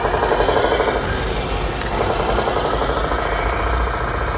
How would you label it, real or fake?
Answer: real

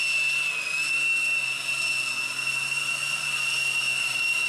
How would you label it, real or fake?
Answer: real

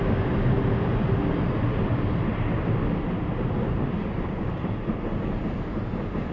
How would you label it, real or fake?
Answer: real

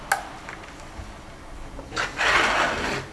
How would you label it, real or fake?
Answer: real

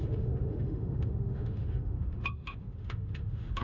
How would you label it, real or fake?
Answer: fake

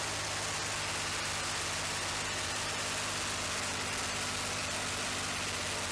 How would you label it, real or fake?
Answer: real